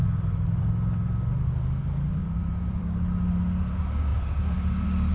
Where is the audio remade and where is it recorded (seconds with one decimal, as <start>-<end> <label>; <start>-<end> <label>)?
0.0-2.2 recorded; 2.2-2.8 remade; 2.8-4.1 recorded; 4.1-5.1 remade